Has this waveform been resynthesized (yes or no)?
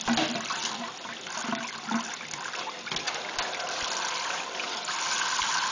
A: no